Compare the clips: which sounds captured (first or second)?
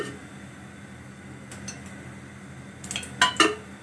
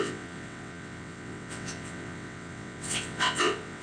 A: first